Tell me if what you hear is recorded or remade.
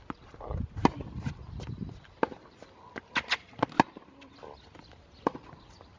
recorded